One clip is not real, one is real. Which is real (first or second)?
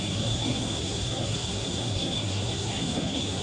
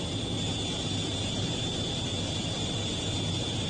second